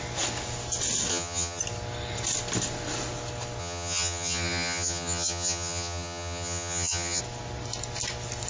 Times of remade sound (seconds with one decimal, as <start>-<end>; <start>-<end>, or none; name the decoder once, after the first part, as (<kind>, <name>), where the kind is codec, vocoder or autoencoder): 1.1-1.6 (vocoder, HiFi-GAN); 3.6-7.2